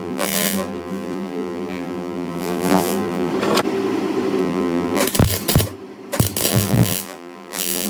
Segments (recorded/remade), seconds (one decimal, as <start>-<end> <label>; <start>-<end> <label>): 0.0-3.3 remade; 3.3-4.4 recorded; 4.4-5.0 remade; 5.0-6.5 recorded; 6.5-7.9 remade